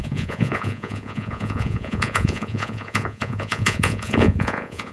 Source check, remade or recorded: remade